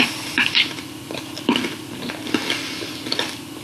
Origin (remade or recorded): remade